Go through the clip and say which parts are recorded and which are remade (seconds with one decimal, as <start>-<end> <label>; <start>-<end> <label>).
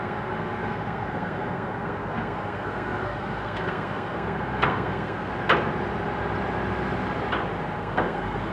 0.0-5.3 remade; 5.3-7.8 recorded; 7.8-8.5 remade